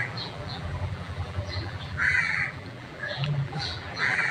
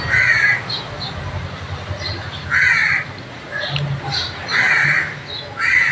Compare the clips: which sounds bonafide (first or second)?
second